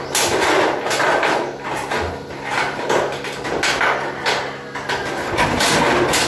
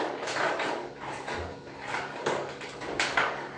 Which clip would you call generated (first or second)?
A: second